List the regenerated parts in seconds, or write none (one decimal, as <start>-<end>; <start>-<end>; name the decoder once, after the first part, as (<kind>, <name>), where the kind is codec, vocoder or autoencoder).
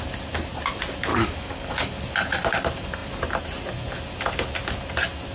1.1-1.9 (codec, DAC)